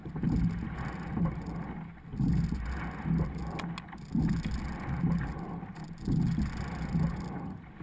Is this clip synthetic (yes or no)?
no